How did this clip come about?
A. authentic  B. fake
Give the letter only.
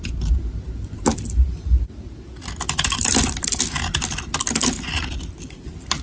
A